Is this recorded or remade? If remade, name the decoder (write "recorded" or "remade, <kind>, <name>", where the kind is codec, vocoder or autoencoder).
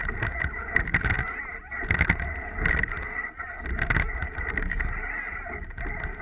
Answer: recorded